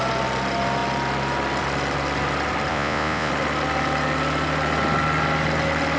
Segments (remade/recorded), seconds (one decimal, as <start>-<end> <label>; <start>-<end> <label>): 0.0-2.7 recorded; 2.7-3.3 remade; 3.3-6.0 recorded